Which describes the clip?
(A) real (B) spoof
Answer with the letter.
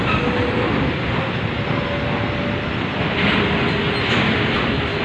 A